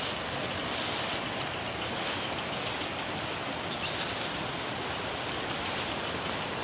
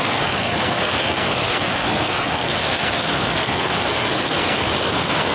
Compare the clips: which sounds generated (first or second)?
second